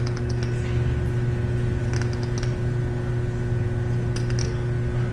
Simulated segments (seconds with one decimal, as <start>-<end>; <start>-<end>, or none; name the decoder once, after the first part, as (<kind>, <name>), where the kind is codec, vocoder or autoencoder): none